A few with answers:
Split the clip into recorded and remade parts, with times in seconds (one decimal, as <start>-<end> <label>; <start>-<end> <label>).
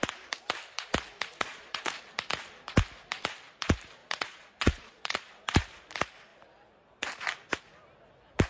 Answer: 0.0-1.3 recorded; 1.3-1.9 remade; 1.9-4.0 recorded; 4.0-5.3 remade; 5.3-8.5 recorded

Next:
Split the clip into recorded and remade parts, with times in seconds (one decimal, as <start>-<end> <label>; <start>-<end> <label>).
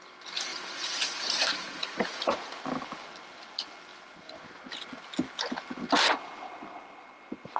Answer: 0.0-0.5 recorded; 0.5-2.6 remade; 2.6-7.6 recorded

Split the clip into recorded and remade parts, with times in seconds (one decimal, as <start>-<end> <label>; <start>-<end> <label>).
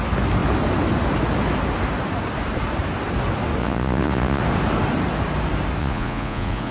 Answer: 0.0-3.6 recorded; 3.6-4.4 remade; 4.4-5.8 recorded; 5.8-6.7 remade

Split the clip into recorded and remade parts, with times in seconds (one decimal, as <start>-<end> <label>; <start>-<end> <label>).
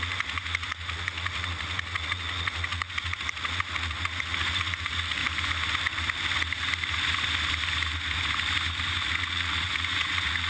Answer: 0.0-5.2 remade; 5.2-9.0 recorded; 9.0-10.5 remade